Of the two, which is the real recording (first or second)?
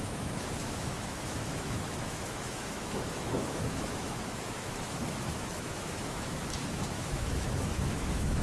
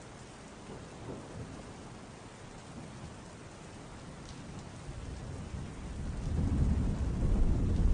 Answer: second